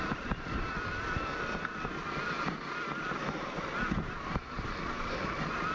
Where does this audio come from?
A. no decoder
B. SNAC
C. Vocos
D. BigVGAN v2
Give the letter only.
A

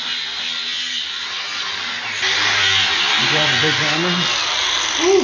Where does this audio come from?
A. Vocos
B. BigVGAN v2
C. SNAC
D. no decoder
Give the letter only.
D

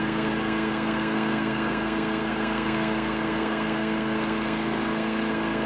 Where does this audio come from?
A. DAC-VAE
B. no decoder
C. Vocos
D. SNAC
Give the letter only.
D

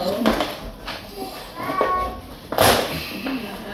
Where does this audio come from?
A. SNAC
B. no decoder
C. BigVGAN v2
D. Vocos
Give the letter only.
B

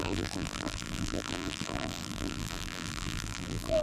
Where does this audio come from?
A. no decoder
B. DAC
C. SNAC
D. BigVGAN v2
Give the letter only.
D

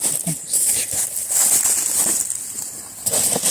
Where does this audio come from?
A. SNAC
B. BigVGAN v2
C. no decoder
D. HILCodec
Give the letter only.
C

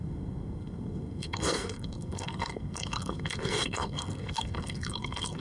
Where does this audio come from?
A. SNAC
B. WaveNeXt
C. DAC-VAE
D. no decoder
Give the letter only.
A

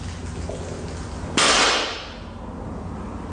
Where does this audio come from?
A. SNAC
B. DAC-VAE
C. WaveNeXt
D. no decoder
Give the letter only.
D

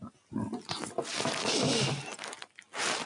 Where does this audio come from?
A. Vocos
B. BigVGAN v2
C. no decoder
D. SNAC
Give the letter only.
C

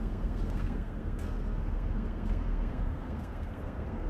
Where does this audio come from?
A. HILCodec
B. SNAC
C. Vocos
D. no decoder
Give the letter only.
B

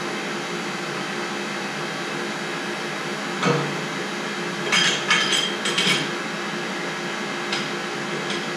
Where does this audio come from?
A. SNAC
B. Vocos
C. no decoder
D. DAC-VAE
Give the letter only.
C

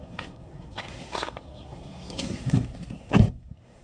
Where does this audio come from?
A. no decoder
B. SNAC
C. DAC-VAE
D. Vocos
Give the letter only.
B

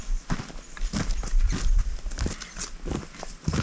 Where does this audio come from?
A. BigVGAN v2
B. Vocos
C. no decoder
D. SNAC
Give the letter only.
C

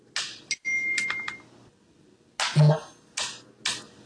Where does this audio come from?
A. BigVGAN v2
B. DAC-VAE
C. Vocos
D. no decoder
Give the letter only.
D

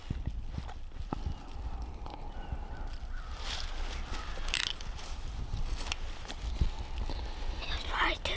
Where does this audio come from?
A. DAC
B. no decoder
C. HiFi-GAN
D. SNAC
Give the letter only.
B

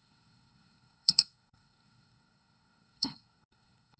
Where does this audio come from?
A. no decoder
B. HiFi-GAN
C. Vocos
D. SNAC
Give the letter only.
D